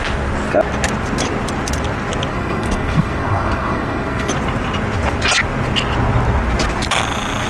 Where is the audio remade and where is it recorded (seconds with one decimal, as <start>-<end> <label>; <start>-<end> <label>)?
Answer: 0.0-2.3 recorded; 2.3-4.3 remade; 4.3-7.5 recorded